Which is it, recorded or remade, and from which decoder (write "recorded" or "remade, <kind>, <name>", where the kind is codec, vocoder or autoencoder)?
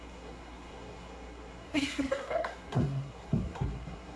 remade, codec, SNAC